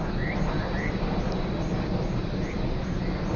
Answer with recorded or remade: recorded